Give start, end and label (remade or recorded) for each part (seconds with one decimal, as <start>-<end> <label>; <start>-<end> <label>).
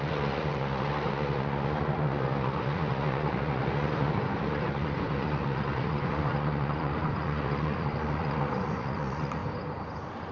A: 0.0-9.4 remade; 9.4-10.3 recorded